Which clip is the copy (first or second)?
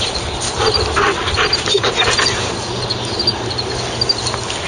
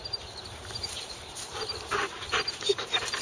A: second